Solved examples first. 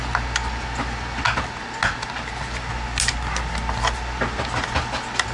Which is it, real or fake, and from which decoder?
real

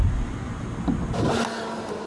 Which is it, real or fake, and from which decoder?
real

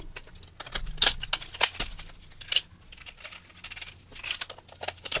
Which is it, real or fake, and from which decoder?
real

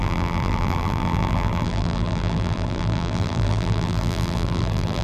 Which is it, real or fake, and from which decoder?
fake, vocoder, BigVGAN v2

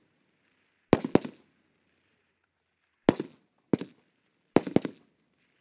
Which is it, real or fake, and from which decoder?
real